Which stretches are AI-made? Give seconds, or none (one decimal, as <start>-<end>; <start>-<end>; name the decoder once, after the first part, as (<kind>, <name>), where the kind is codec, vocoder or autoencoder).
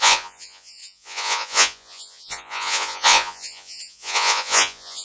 0.0-5.0 (vocoder, Vocos)